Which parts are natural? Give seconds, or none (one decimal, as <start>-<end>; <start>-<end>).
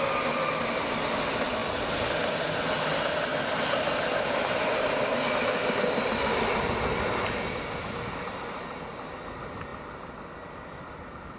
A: 0.0-11.4